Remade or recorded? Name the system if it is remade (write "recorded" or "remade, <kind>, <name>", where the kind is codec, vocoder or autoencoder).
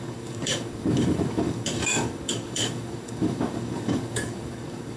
remade, codec, DAC